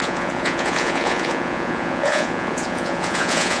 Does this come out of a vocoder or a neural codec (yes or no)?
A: yes